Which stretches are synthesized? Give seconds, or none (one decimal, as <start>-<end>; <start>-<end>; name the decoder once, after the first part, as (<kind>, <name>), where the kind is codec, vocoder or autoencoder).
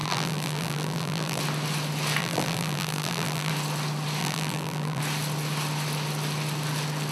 0.0-1.4 (vocoder, BigVGAN v2); 2.2-3.5; 4.2-5.0